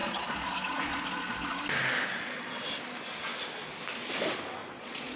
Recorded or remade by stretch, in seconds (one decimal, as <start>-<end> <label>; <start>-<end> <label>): 0.0-1.6 remade; 1.6-2.1 recorded; 2.1-2.6 remade; 2.6-4.6 recorded; 4.6-5.2 remade